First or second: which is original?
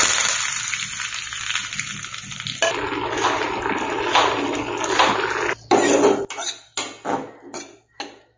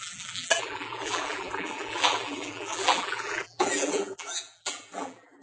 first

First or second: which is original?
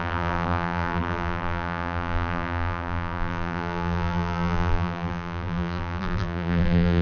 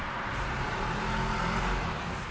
second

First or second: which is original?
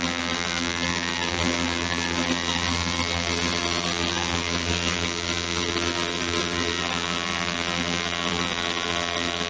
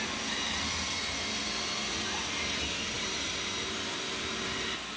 second